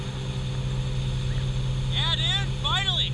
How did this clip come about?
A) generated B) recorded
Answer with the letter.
B